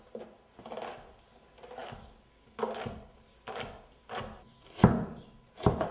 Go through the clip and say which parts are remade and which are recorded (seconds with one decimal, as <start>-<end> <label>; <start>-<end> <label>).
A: 0.0-5.9 recorded